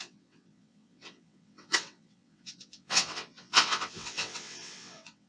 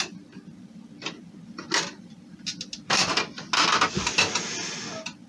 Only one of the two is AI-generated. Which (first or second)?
first